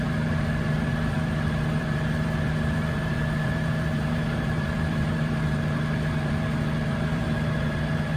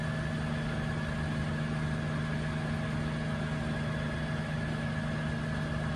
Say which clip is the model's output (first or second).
first